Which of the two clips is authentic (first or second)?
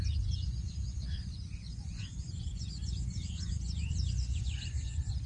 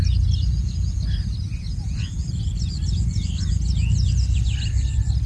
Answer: second